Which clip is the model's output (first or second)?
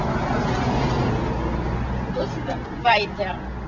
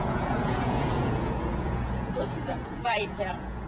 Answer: second